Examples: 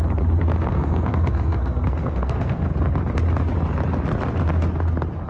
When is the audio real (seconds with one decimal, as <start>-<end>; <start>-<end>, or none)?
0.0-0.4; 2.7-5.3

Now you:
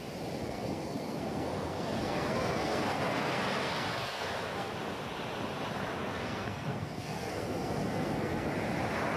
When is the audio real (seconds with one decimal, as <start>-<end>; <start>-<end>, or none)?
0.0-0.4; 4.7-6.0; 8.5-9.2

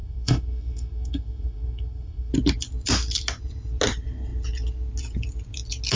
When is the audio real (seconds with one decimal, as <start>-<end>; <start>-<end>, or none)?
2.3-6.0

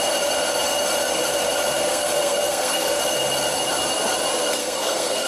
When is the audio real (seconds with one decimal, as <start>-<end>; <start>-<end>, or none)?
0.0-1.9; 3.0-4.6